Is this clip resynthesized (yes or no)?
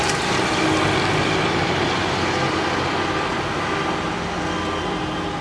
no